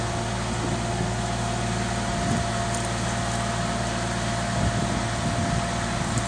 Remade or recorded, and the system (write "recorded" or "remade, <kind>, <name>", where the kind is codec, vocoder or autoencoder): recorded